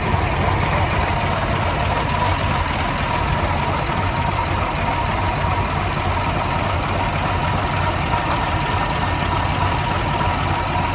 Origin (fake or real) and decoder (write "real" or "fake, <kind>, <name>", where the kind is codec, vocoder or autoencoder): real